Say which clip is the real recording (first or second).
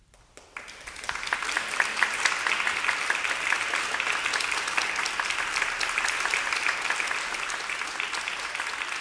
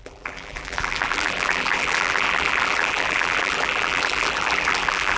first